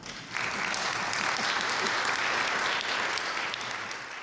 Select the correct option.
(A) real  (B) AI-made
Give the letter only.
A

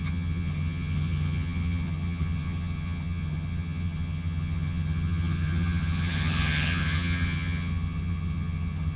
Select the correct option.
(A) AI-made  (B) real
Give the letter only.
A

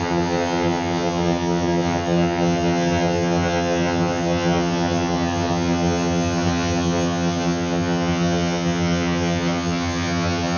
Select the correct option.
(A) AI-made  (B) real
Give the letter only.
A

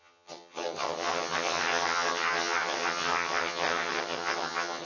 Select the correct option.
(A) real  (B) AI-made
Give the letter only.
B